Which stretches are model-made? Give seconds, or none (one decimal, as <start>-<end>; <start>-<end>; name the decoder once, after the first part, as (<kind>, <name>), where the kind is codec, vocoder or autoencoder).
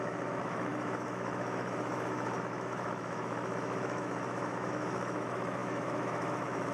0.0-6.7 (autoencoder, DAC-VAE)